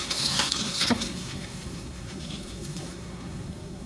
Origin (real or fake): fake